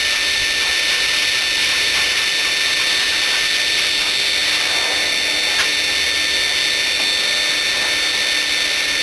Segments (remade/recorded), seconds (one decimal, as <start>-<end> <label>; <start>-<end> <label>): 0.0-1.6 recorded; 1.6-2.3 remade; 2.3-9.0 recorded